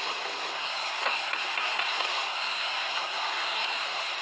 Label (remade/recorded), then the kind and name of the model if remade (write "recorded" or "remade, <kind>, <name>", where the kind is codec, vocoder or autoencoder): remade, codec, SNAC